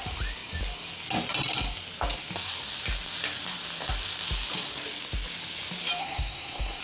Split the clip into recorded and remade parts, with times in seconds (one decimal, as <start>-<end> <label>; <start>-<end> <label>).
0.0-6.0 recorded; 6.0-6.8 remade